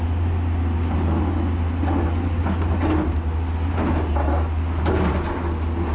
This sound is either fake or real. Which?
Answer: real